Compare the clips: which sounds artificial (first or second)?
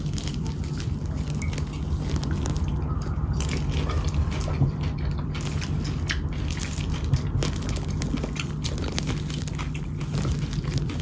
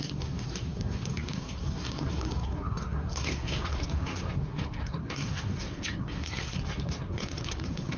second